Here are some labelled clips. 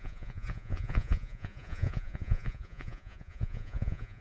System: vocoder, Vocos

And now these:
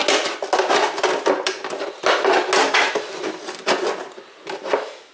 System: none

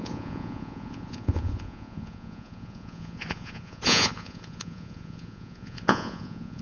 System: vocoder, Vocos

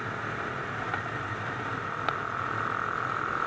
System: none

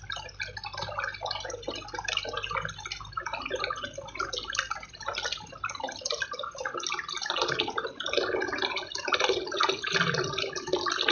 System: none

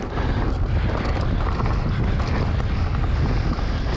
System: none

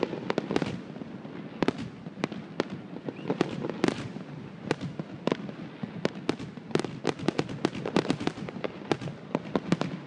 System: none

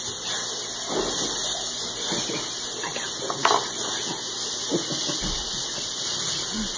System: none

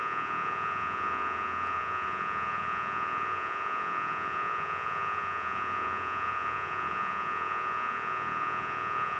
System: vocoder, Vocos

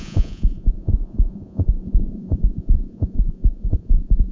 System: vocoder, Vocos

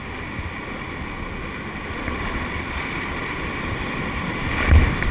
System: none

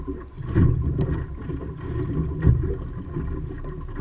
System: none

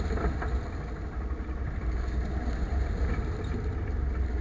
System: none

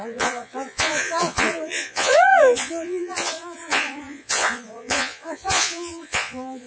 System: vocoder, Vocos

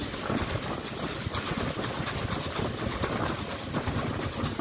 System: none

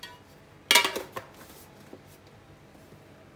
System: none